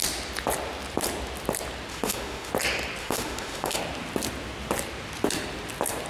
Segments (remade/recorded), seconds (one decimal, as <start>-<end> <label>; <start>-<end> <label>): 0.0-1.9 recorded; 1.9-2.5 remade; 2.5-3.0 recorded; 3.0-3.8 remade; 3.8-6.1 recorded